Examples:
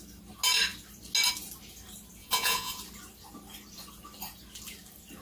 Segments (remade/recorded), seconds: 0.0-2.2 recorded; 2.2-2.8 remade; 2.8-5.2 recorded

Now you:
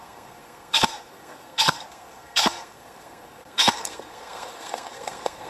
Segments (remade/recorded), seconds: 0.0-5.5 remade

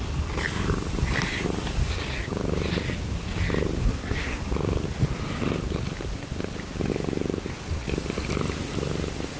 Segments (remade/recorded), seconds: 0.0-3.8 recorded; 3.8-4.4 remade; 4.4-9.4 recorded

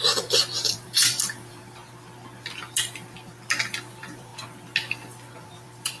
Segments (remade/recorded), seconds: 0.0-1.8 remade; 1.8-3.9 recorded; 3.9-4.3 remade; 4.3-5.4 recorded; 5.4-6.0 remade

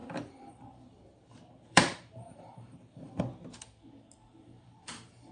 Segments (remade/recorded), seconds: 0.0-3.2 remade; 3.2-4.3 recorded; 4.3-5.3 remade

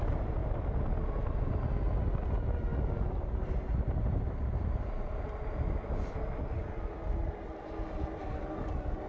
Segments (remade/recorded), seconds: 0.0-9.1 recorded

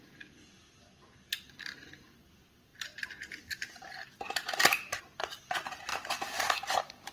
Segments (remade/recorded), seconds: 0.0-7.1 recorded

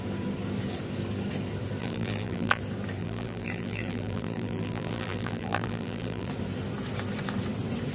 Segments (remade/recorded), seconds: 0.0-1.8 recorded; 1.8-2.6 remade; 2.6-3.0 recorded; 3.0-6.3 remade; 6.3-7.9 recorded